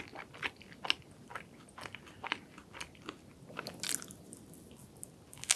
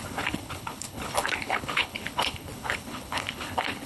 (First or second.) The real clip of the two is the first